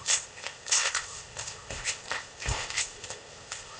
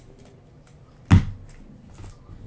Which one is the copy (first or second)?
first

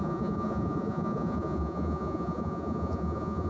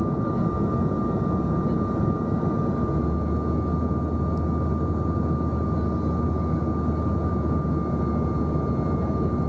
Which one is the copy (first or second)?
first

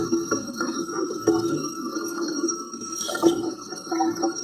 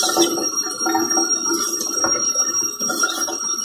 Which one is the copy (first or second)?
first